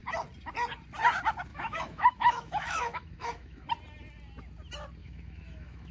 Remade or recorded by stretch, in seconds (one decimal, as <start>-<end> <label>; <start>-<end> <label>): 0.0-1.5 recorded; 1.5-3.7 remade; 3.7-5.0 recorded; 5.0-5.9 remade